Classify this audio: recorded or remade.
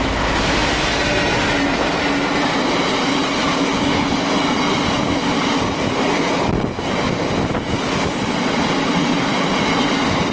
recorded